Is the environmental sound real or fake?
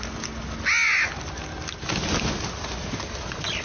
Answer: real